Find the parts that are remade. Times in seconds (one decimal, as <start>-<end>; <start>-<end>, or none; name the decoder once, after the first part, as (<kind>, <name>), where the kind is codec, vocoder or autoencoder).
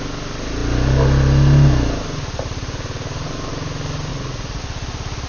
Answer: 4.1-4.6 (vocoder, Vocos)